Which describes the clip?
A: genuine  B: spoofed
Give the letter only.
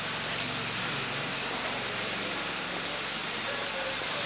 A